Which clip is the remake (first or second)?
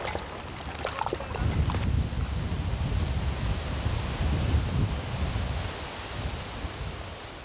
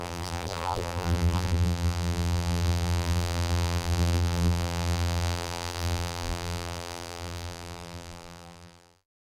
second